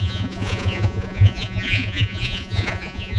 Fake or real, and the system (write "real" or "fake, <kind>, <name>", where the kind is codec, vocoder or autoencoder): fake, vocoder, Vocos